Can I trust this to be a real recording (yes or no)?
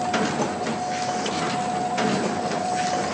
yes